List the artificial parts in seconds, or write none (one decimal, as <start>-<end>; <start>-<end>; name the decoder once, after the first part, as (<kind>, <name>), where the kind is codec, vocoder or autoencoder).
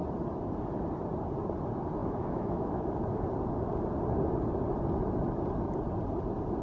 2.0-3.2 (autoencoder, DAC-VAE)